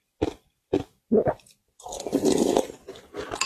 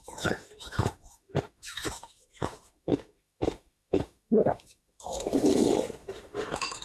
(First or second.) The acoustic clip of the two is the first